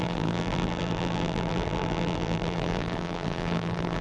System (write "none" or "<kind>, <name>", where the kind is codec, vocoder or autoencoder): vocoder, BigVGAN v2